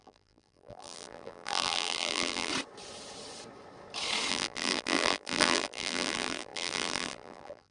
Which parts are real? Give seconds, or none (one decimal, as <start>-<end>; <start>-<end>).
2.5-4.3